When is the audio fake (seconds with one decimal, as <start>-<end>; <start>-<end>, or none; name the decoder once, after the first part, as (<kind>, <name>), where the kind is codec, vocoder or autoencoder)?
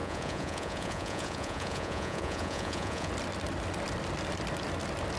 0.0-3.1 (vocoder, Vocos)